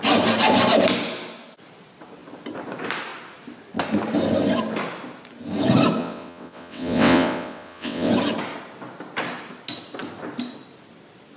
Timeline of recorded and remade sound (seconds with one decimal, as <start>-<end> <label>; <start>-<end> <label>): 0.0-6.0 recorded; 6.0-8.1 remade; 8.1-11.4 recorded